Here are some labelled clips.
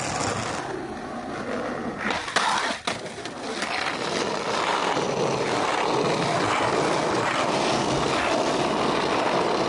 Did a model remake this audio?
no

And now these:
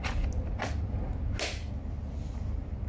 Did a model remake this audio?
no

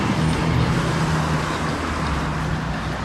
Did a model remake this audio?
no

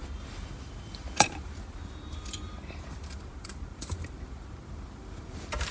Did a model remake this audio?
yes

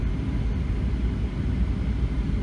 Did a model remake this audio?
no